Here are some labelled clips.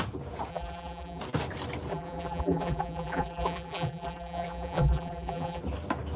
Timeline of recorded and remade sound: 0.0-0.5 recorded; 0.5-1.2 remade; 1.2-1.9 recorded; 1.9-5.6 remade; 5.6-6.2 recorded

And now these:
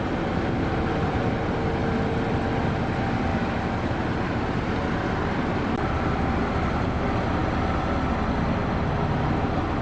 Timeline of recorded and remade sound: 0.0-3.3 remade; 3.3-4.1 recorded; 4.1-7.4 remade; 7.4-8.2 recorded; 8.2-8.6 remade; 8.6-9.2 recorded; 9.2-9.8 remade

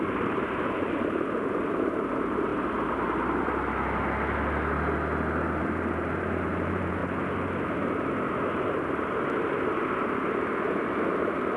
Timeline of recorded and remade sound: 0.0-2.5 remade; 2.5-5.6 recorded; 5.6-7.0 remade; 7.0-11.2 recorded; 11.2-11.6 remade

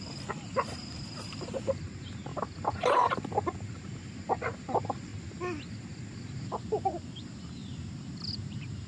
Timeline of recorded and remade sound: 0.0-2.3 remade; 2.3-3.7 recorded; 3.7-5.1 remade; 5.1-6.8 recorded; 6.8-7.6 remade; 7.6-8.3 recorded; 8.3-8.9 remade

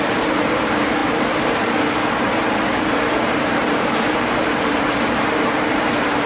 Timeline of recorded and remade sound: 0.0-6.3 remade